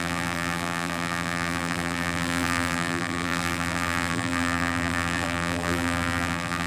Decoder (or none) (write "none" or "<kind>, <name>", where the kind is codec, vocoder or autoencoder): vocoder, BigVGAN v2